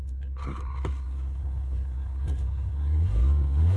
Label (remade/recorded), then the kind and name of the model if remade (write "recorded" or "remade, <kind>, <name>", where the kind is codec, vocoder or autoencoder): remade, codec, SNAC